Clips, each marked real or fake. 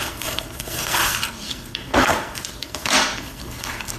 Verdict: fake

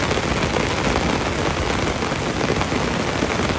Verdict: real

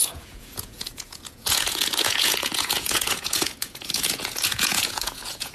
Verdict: fake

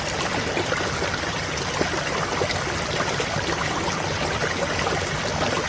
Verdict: real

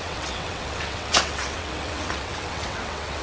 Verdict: fake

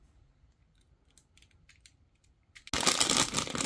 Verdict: real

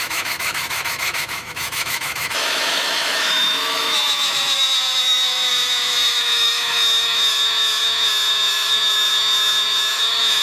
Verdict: fake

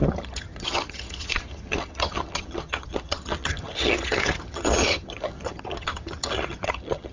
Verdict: fake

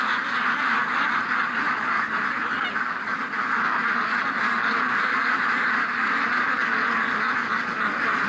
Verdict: real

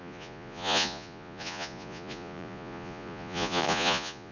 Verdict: fake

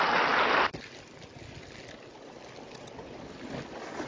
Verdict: real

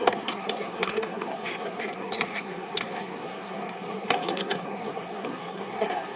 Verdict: fake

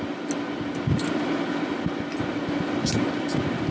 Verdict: real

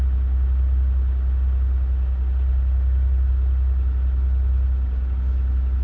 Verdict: real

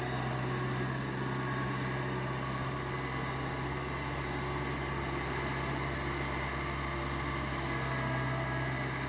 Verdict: real